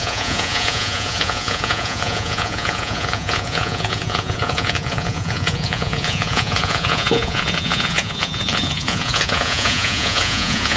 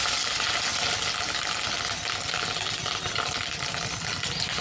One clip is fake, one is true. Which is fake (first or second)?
first